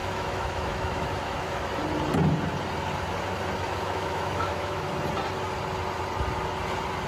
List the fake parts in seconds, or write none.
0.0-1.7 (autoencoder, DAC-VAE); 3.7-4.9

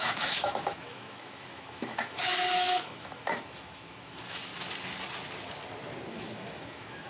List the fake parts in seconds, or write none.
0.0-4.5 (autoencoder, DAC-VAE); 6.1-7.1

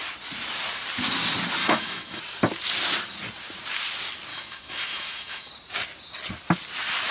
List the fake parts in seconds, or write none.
1.6-2.2 (autoencoder, DAC-VAE); 4.3-5.5

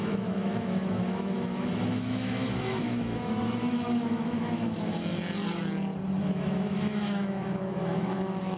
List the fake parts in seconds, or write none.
0.0-5.1 (autoencoder, DAC-VAE); 6.2-8.6

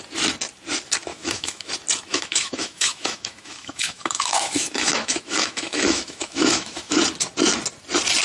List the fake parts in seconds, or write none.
1.1-1.7 (autoencoder, DAC-VAE); 2.1-7.0